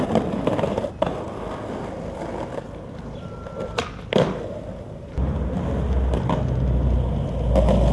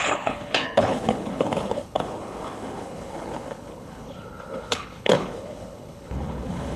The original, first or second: first